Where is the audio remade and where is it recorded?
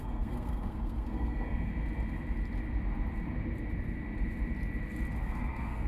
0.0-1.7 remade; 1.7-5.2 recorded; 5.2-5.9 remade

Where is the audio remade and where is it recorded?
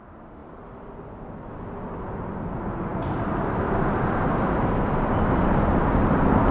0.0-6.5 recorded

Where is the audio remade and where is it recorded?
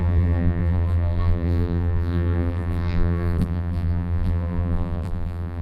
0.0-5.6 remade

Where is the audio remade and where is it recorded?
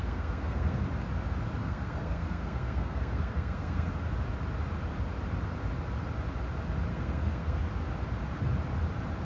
0.0-0.8 remade; 0.8-1.6 recorded; 1.6-3.9 remade; 3.9-6.9 recorded; 6.9-7.6 remade; 7.6-9.2 recorded